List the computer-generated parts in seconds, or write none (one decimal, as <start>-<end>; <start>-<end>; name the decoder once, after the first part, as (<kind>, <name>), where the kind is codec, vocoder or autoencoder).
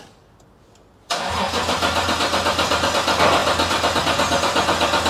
none